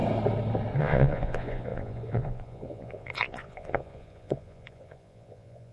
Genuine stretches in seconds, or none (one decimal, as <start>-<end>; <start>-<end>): 0.0-0.8